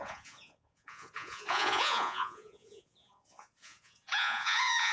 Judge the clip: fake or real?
fake